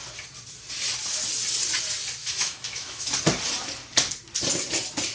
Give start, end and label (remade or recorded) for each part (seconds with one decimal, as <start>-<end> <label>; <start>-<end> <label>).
0.0-2.2 recorded; 2.2-3.1 remade; 3.1-5.1 recorded